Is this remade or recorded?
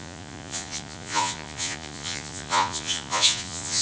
remade